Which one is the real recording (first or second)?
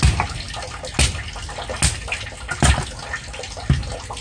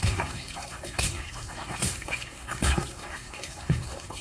first